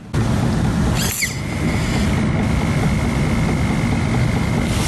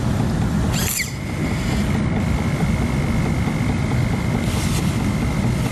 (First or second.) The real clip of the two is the first